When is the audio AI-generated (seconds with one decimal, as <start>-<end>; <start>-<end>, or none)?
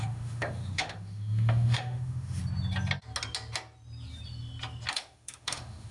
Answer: 0.0-2.4; 4.9-5.9